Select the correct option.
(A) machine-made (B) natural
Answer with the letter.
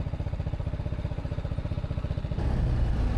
B